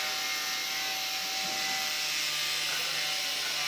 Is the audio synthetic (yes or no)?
no